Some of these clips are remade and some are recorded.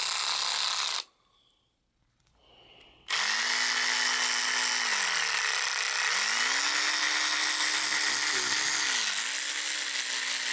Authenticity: recorded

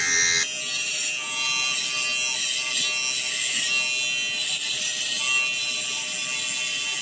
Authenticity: recorded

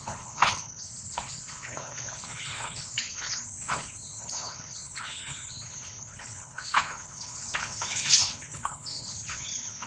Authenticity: remade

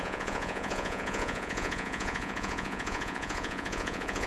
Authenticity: remade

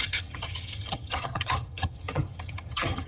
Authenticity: remade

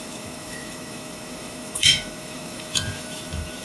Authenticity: remade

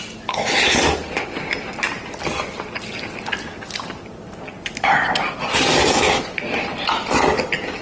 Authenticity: recorded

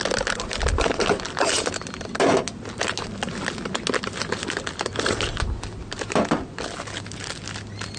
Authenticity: recorded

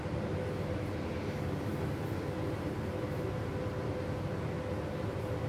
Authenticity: recorded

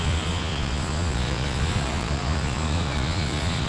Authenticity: remade